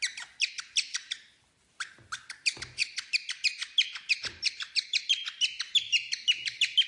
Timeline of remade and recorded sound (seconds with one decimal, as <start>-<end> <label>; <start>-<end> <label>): 0.0-6.9 recorded